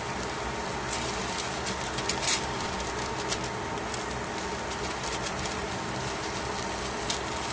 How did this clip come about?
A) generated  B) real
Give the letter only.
B